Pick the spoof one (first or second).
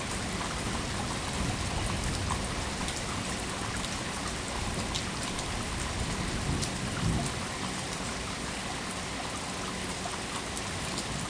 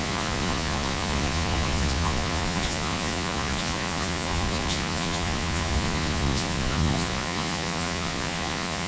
second